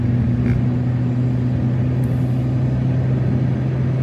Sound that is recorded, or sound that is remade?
recorded